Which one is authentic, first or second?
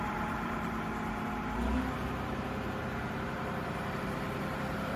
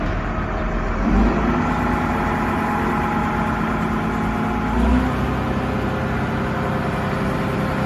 second